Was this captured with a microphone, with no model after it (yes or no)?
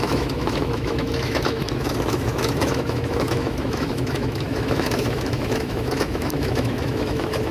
no